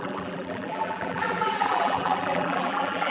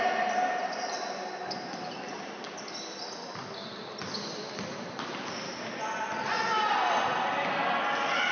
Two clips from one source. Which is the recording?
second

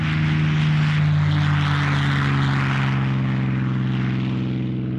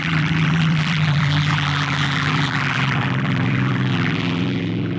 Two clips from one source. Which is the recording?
first